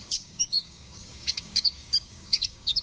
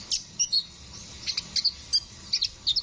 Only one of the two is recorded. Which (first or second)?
second